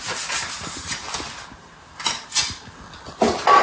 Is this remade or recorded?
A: recorded